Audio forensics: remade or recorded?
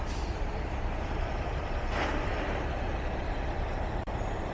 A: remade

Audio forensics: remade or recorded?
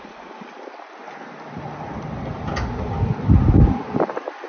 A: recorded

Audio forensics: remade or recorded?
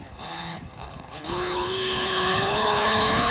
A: remade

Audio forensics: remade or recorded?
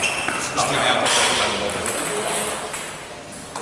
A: recorded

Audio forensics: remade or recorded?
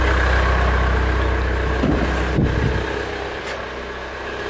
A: recorded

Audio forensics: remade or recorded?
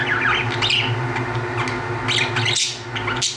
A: recorded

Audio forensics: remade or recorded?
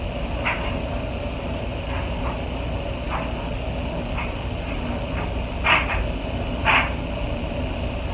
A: recorded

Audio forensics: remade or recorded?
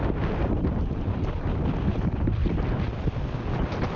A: recorded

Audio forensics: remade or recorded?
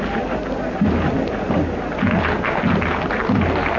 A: recorded